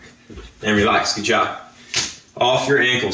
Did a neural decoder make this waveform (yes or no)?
no